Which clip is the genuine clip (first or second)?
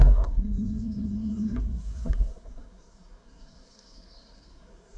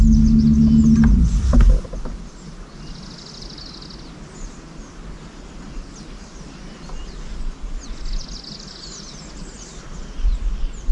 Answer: second